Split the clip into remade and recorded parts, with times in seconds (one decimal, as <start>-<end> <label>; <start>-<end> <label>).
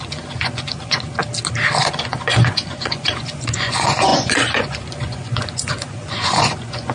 0.0-1.2 remade; 1.2-1.9 recorded; 1.9-6.9 remade